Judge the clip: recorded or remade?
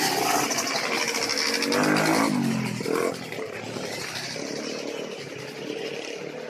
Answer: recorded